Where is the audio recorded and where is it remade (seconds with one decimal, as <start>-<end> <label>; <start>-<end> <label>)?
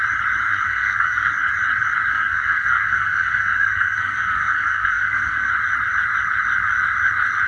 0.0-0.5 recorded; 0.5-1.3 remade; 1.3-2.1 recorded; 2.1-5.5 remade; 5.5-7.5 recorded